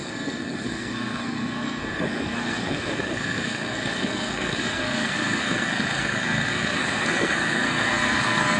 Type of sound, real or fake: fake